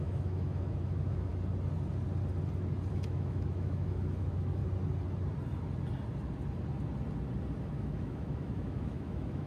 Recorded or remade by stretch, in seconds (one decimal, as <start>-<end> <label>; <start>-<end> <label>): 0.0-1.3 remade; 1.3-2.9 recorded; 2.9-4.6 remade; 4.6-7.6 recorded; 7.6-9.5 remade